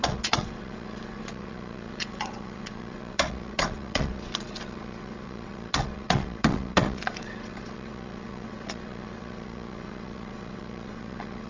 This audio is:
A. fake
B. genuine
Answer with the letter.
A